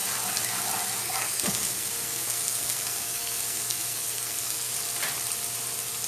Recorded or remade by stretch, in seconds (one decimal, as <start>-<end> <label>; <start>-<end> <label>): 0.0-1.0 recorded; 1.0-4.7 remade; 4.7-6.1 recorded